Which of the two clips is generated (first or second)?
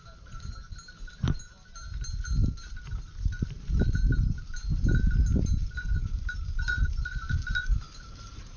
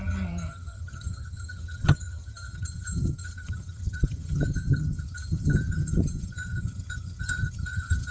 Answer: second